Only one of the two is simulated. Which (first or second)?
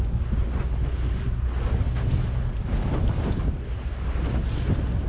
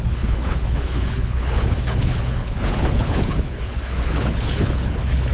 second